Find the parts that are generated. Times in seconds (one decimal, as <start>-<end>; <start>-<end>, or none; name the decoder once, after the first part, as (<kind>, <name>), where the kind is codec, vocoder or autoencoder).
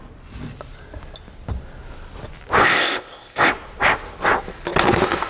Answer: 2.6-3.5 (codec, ZipCodec)